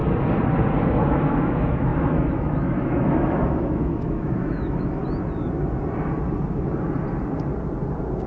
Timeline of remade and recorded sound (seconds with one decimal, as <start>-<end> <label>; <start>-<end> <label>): 0.0-1.1 recorded; 1.1-5.0 remade; 5.0-8.3 recorded